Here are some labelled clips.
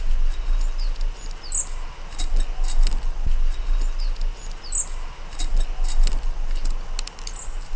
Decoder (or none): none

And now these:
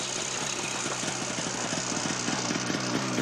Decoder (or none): none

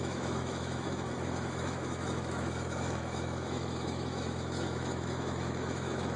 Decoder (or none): autoencoder, DAC-VAE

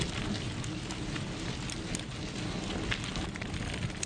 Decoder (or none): none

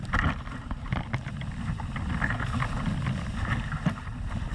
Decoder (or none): none